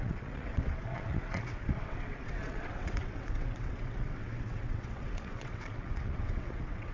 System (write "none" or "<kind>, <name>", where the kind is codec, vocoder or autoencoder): vocoder, WaveNeXt